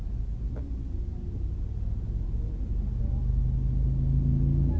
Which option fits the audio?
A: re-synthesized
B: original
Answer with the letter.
B